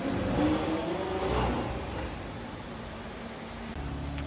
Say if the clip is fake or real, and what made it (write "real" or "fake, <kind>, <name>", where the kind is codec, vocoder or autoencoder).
real